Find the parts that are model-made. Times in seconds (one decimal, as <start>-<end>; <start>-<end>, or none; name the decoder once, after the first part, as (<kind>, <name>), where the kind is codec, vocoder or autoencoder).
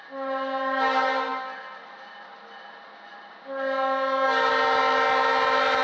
none